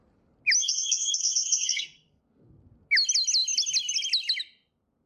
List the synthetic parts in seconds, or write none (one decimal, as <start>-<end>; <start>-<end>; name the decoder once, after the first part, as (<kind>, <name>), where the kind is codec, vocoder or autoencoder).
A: 0.6-2.2 (codec, SNAC)